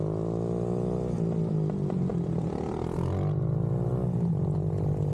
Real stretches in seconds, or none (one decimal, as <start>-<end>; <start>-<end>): 0.0-5.1